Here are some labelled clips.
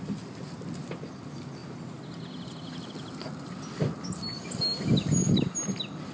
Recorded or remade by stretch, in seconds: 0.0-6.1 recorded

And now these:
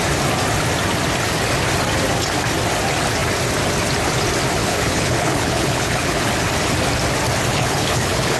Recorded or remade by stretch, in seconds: 0.0-4.6 recorded; 4.6-6.2 remade; 6.2-7.5 recorded; 7.5-8.4 remade

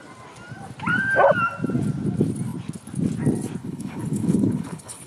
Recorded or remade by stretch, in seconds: 0.0-3.6 recorded; 3.6-5.1 remade

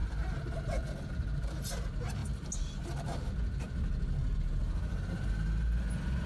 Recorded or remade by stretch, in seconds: 0.0-6.3 recorded

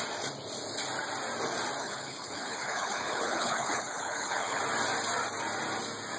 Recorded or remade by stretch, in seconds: 0.0-1.8 recorded; 1.8-4.6 remade; 4.6-6.2 recorded

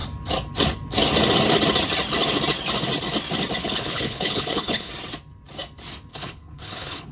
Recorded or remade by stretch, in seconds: 0.0-3.6 recorded; 3.6-4.9 remade; 4.9-6.1 recorded; 6.1-7.1 remade

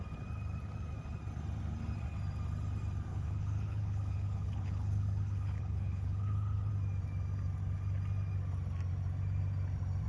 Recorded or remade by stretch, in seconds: 0.0-3.1 recorded; 3.1-6.7 remade; 6.7-10.1 recorded